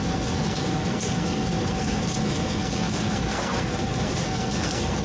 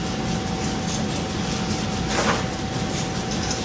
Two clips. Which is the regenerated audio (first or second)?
first